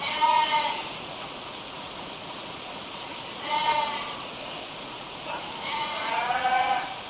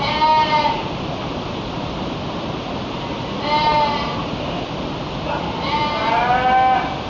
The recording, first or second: second